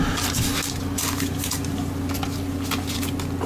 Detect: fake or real real